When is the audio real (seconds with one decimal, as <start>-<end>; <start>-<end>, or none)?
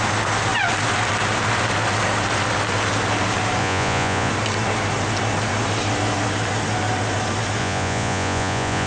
0.0-3.6; 4.3-7.6